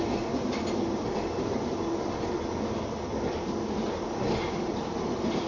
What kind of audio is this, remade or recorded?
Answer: recorded